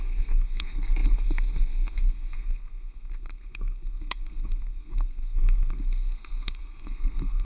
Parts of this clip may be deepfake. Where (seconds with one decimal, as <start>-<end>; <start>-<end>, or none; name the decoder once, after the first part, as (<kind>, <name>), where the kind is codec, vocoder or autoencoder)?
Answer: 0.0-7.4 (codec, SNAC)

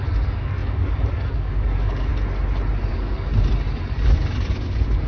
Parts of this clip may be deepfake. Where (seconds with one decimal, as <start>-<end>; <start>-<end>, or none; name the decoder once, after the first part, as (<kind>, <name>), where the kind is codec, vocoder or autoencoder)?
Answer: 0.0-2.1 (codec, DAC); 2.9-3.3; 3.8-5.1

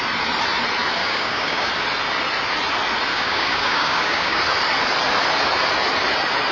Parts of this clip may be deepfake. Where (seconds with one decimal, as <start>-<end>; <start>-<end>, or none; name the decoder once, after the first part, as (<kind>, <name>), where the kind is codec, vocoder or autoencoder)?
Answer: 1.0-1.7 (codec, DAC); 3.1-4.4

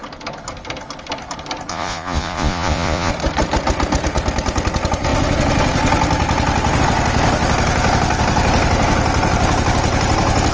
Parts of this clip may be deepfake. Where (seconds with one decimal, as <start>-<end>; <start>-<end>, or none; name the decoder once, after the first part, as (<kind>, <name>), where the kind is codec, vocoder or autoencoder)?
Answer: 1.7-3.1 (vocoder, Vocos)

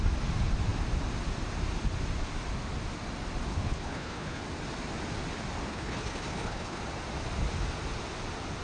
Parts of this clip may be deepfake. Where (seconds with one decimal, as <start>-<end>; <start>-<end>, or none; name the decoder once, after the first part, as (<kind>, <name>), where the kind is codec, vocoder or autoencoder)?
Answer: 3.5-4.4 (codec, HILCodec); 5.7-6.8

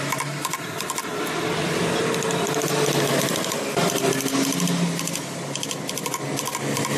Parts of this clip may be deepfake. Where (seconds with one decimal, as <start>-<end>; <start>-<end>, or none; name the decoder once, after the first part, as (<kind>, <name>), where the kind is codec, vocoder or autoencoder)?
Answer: none

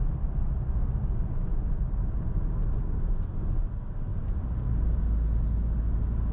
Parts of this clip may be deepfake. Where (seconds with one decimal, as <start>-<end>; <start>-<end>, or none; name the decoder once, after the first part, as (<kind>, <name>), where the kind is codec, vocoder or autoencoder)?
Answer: 1.5-2.6 (vocoder, BigVGAN v2); 4.1-5.0

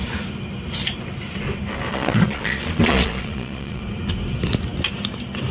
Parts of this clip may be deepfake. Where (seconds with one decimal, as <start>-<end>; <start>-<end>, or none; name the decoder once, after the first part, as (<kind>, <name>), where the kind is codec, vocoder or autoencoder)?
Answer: 1.9-3.8 (vocoder, Vocos)